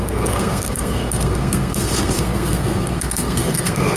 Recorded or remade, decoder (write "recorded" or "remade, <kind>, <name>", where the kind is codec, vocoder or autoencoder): remade, codec, SNAC